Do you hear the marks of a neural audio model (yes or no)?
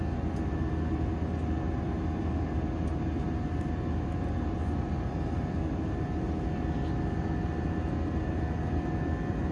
no